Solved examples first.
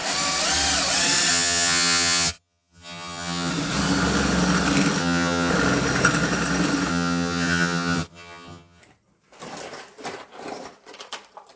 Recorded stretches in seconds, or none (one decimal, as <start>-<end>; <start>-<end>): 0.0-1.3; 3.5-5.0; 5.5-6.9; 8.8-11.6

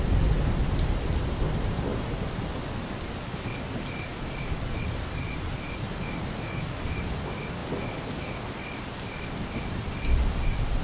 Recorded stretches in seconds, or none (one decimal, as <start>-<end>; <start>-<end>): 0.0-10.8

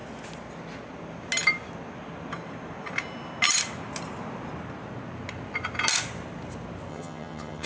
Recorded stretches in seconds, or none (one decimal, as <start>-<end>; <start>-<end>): 0.0-6.9